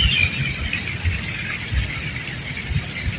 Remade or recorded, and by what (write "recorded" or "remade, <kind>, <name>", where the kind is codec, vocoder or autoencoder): remade, vocoder, BigVGAN v2